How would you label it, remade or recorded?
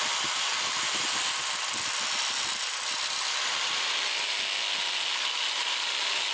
recorded